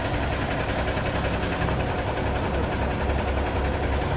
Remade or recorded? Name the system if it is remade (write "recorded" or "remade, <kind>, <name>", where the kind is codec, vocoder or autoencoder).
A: recorded